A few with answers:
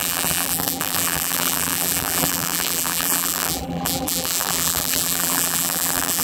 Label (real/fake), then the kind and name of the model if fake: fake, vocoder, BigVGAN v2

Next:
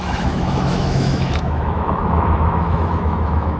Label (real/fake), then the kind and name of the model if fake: fake, autoencoder, DAC-VAE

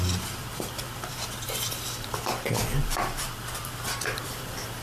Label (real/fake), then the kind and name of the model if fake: fake, vocoder, BigVGAN v2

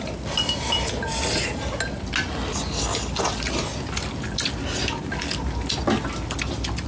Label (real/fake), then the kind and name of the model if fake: real